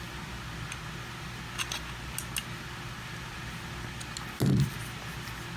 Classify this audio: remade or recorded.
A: recorded